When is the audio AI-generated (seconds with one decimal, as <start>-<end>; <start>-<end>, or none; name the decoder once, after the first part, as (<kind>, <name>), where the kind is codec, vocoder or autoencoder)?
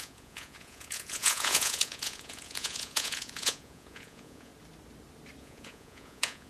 0.0-4.5 (vocoder, Vocos); 5.4-6.5